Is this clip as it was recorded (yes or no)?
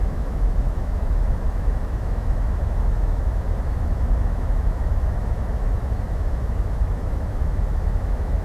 no